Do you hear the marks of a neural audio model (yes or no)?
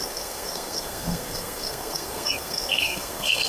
yes